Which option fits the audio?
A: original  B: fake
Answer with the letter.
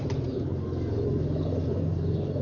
A